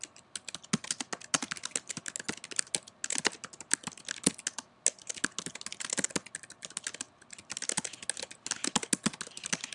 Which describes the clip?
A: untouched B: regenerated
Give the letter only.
A